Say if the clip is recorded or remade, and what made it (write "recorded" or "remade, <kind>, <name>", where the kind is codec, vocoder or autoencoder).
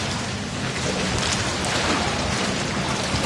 remade, vocoder, BigVGAN v2